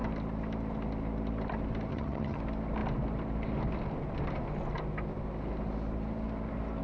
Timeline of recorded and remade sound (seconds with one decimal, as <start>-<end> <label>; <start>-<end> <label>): 0.0-1.9 recorded; 1.9-2.4 remade; 2.4-6.8 recorded